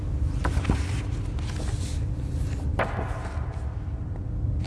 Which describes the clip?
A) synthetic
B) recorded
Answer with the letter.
B